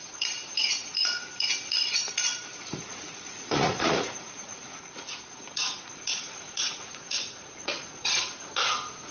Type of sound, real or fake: fake